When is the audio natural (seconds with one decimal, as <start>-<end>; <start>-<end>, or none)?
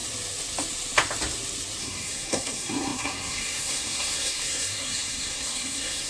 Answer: 0.0-1.8